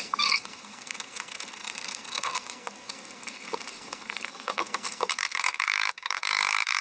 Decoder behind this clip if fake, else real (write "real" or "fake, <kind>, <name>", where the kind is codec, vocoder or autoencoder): fake, codec, SNAC